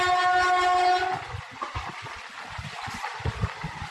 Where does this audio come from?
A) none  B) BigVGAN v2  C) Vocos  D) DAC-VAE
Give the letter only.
A